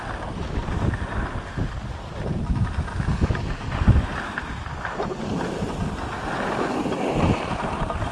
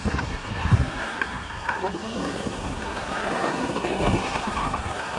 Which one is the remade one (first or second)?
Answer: second